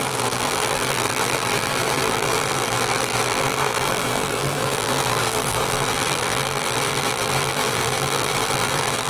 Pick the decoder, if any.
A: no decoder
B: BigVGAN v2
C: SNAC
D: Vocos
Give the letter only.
B